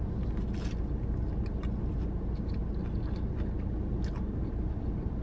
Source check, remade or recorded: recorded